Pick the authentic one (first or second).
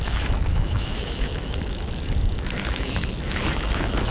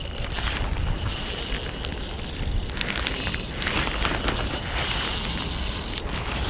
second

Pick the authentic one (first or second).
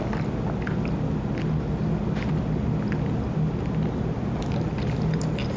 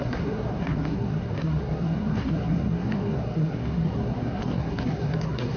first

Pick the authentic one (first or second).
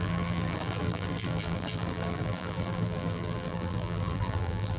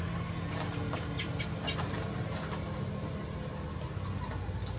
second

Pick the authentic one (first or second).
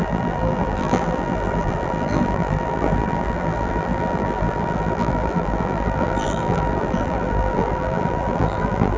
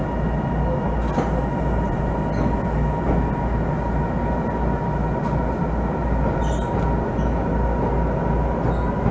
second